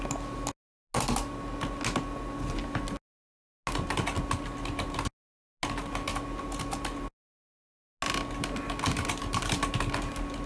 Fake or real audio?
real